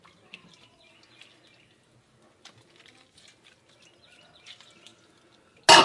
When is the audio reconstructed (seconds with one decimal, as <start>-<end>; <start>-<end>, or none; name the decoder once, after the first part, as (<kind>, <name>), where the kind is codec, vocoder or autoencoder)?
none